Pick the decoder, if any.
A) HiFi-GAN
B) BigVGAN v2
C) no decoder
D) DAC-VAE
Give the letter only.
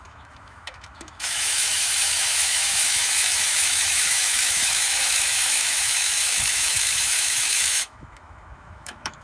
D